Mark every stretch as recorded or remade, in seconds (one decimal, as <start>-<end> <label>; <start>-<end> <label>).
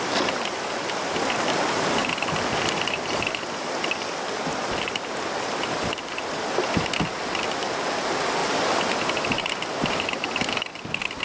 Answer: 0.0-11.2 recorded